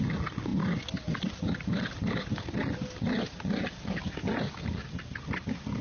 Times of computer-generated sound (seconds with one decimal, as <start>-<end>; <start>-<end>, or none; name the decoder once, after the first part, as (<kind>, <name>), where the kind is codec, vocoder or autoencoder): none

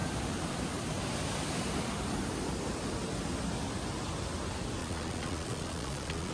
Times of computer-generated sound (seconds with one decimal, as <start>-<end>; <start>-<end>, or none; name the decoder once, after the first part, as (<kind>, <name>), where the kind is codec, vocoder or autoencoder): 4.8-6.3 (vocoder, Vocos)